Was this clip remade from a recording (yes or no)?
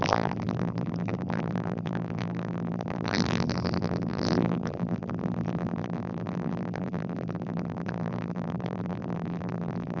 yes